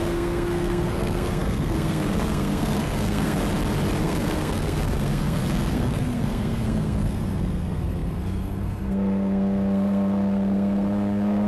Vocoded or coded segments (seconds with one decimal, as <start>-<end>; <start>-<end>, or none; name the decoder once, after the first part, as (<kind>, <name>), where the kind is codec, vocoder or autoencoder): 0.0-3.4 (codec, SNAC); 4.0-11.5